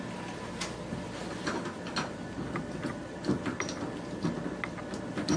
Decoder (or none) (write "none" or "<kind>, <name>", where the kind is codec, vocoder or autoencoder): none